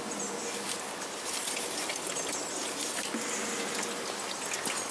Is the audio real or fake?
real